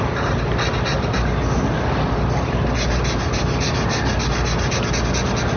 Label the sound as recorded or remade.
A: recorded